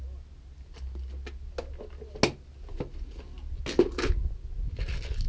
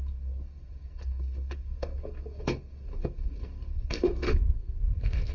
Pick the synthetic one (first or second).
second